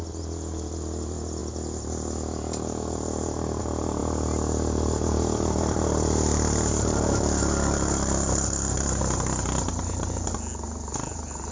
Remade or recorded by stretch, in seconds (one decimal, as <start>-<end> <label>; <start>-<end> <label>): 0.0-11.5 recorded